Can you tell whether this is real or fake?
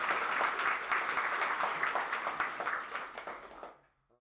real